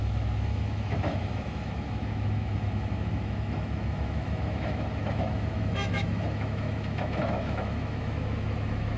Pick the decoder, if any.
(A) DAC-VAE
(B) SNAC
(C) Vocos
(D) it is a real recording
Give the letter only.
A